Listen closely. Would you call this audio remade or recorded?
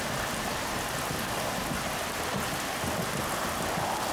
recorded